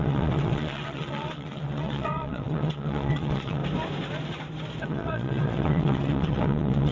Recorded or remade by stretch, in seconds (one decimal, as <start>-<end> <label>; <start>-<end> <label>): 0.0-3.6 remade; 3.6-4.8 recorded; 4.8-6.9 remade